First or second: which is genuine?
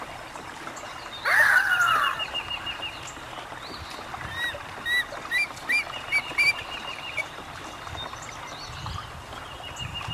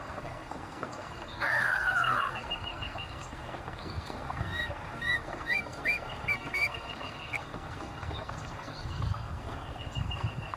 first